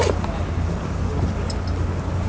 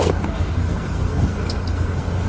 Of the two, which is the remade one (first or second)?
second